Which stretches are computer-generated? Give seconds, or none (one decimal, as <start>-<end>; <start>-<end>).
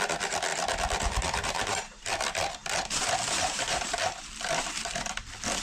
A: 0.5-2.2; 2.6-4.8